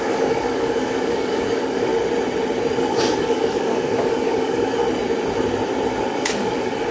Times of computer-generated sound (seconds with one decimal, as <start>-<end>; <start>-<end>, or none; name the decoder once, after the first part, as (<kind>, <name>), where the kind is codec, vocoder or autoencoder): 0.0-1.9 (codec, DAC); 2.8-4.8; 6.0-6.9